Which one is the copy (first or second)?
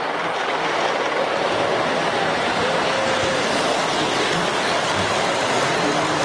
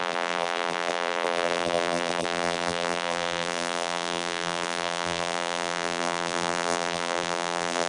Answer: second